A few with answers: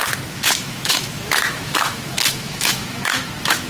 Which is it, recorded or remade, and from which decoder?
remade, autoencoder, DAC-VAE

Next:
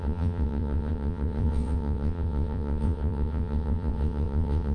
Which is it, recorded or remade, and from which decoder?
remade, vocoder, WaveNeXt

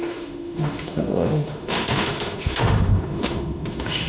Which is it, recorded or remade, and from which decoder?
remade, autoencoder, DAC-VAE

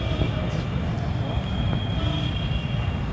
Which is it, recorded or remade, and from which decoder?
recorded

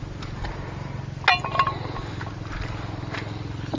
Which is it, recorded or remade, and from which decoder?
recorded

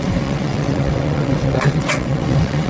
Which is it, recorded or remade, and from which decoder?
remade, vocoder, WaveNeXt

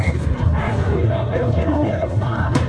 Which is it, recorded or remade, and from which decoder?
remade, codec, SNAC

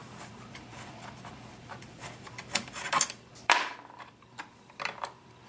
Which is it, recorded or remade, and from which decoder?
remade, vocoder, BigVGAN v2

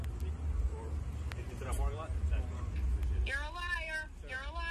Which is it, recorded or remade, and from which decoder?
recorded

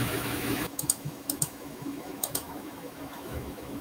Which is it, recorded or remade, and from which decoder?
remade, autoencoder, DAC-VAE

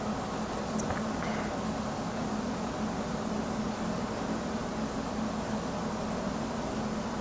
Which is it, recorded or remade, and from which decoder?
recorded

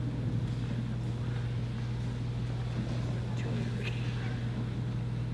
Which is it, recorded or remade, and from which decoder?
recorded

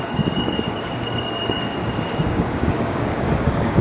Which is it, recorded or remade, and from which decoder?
remade, codec, DAC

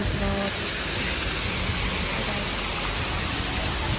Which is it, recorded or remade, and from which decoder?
recorded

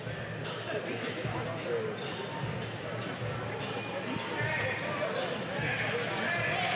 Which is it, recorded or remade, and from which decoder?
recorded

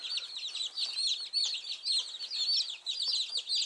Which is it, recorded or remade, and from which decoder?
recorded